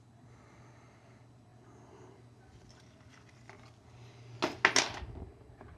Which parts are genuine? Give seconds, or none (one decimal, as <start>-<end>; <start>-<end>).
0.0-5.8